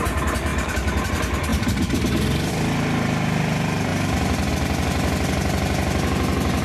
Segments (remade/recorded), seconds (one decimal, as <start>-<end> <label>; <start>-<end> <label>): 0.0-0.5 recorded; 0.5-1.1 remade; 1.1-1.5 recorded; 1.5-2.5 remade; 2.5-6.6 recorded